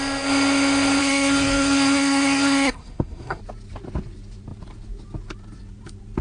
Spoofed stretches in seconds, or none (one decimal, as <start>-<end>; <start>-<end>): 1.0-3.4